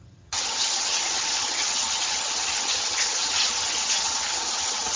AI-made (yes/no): yes